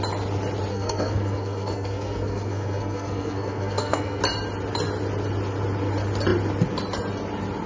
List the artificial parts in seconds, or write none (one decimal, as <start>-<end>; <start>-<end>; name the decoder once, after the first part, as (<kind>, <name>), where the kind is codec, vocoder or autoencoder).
0.7-4.2 (codec, SNAC)